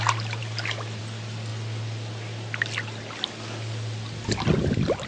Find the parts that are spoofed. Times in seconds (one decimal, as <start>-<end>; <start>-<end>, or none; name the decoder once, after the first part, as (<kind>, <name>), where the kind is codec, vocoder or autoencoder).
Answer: none